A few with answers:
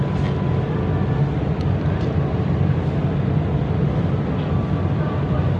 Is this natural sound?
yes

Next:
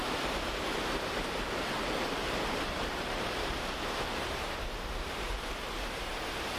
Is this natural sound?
no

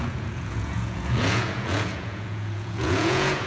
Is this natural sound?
no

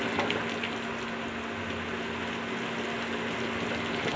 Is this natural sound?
yes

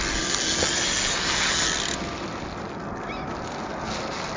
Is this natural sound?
yes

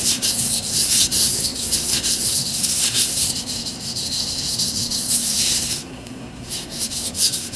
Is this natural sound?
no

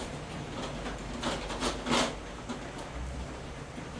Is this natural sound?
yes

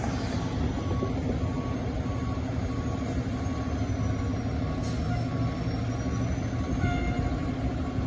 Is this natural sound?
yes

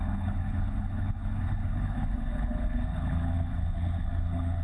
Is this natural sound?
no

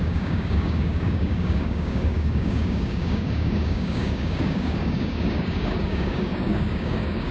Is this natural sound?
no